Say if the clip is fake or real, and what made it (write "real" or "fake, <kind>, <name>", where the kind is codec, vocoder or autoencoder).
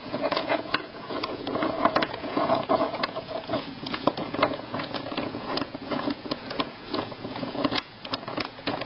fake, vocoder, Vocos